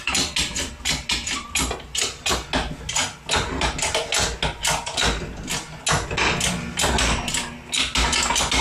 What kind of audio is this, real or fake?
real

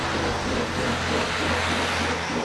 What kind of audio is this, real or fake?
real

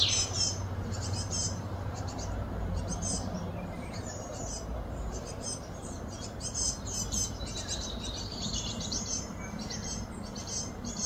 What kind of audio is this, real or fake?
fake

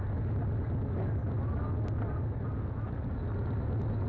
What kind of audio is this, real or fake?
real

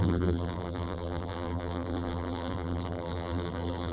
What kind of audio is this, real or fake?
fake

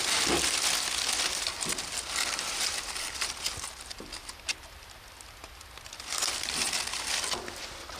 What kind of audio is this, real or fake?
real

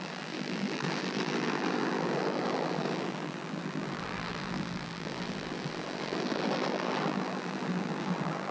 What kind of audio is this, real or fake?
fake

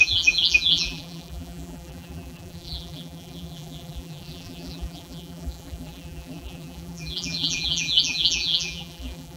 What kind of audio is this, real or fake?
fake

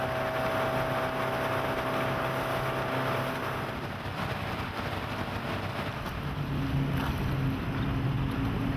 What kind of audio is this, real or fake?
real